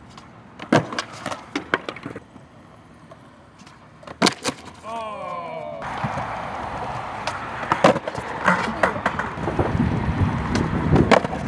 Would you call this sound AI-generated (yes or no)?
no